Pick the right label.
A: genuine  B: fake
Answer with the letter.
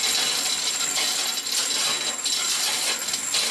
A